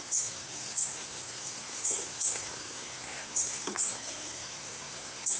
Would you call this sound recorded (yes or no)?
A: no